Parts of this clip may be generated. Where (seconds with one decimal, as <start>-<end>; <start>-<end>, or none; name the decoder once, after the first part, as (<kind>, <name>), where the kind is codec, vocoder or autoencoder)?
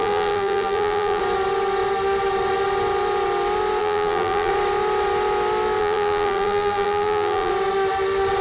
0.0-1.2 (vocoder, BigVGAN v2); 3.8-4.5; 5.8-7.5